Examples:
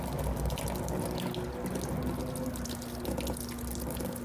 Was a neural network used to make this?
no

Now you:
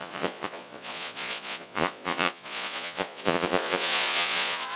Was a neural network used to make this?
yes